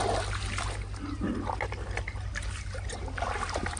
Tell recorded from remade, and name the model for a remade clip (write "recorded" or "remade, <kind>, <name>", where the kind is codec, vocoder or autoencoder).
recorded